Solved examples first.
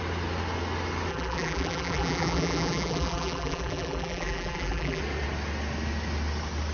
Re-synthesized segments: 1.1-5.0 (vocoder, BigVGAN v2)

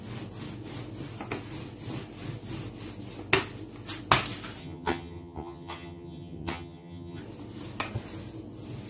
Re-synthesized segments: 4.6-7.2 (vocoder, HiFi-GAN)

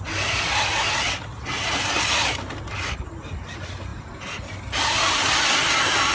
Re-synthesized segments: none